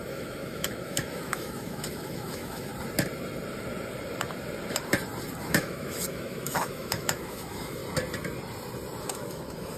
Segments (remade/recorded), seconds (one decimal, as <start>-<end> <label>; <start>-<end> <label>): 0.0-2.7 remade; 2.7-5.4 recorded; 5.4-7.8 remade; 7.8-9.0 recorded; 9.0-9.8 remade